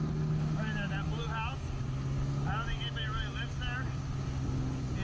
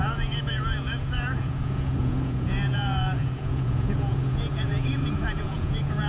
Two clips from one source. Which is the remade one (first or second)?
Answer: second